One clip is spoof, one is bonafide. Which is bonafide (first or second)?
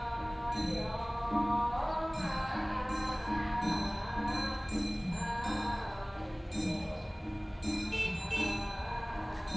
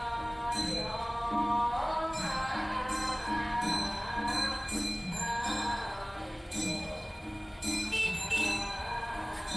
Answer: first